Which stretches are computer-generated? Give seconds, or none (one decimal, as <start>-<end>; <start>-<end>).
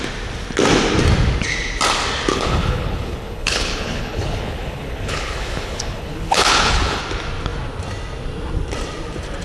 2.3-7.0